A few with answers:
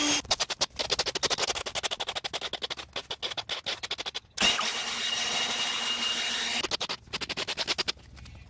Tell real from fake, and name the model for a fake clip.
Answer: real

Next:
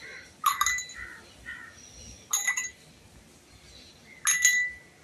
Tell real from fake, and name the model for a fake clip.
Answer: real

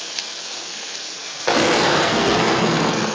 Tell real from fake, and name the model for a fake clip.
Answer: fake, codec, SNAC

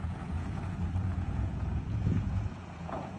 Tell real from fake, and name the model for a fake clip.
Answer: fake, vocoder, Vocos